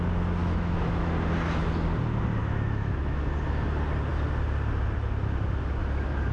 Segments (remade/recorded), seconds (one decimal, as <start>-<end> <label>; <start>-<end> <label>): 0.0-0.4 recorded; 0.4-1.1 remade; 1.1-2.4 recorded; 2.4-3.2 remade; 3.2-6.3 recorded